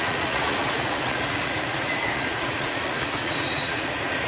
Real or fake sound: fake